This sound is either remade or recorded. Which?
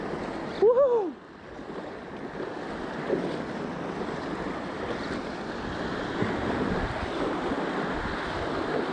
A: recorded